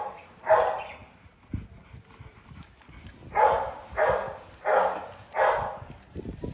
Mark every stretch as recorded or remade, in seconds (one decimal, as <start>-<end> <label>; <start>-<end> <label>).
0.0-6.5 recorded

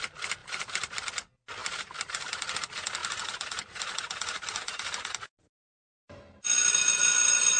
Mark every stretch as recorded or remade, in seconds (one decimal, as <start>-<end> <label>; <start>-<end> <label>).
0.0-0.4 recorded; 0.4-1.1 remade; 1.1-1.6 recorded; 1.6-2.4 remade; 2.4-3.0 recorded; 3.0-6.2 remade; 6.2-7.6 recorded

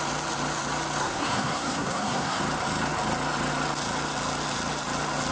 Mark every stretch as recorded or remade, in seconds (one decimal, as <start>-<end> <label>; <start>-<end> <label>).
0.0-1.0 recorded; 1.0-2.4 remade; 2.4-5.3 recorded

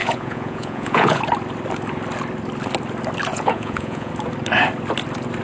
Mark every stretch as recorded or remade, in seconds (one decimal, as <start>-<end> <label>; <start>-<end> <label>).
0.0-1.2 remade; 1.2-3.3 recorded; 3.3-4.1 remade; 4.1-5.4 recorded